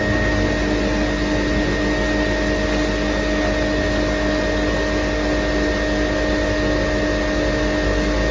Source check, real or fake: real